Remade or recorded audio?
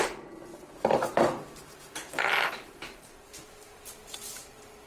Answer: remade